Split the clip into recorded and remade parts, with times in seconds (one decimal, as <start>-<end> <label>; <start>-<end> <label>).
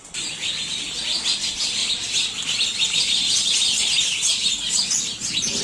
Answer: 0.0-1.8 recorded; 1.8-3.1 remade; 3.1-5.6 recorded